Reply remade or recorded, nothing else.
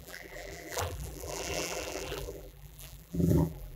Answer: remade